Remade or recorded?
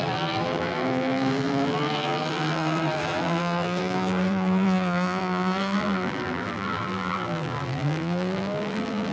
remade